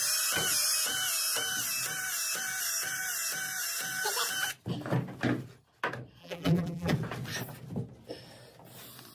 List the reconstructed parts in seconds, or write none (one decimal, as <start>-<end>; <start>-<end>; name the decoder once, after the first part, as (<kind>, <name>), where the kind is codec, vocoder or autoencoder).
6.2-6.9 (vocoder, BigVGAN v2)